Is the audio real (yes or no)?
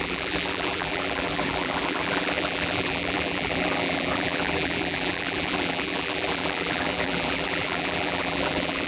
no